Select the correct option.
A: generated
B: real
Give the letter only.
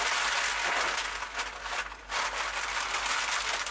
B